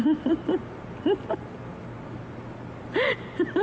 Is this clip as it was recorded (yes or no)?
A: yes